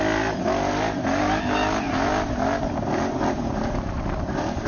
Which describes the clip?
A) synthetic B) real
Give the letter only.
B